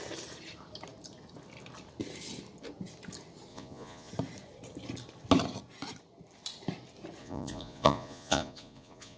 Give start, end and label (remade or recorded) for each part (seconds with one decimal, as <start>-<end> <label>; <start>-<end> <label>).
0.0-3.5 recorded; 3.5-4.1 remade; 4.1-7.2 recorded; 7.2-9.2 remade